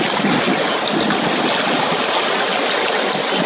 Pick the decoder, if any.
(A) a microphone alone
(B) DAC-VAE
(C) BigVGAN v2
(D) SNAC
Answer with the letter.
A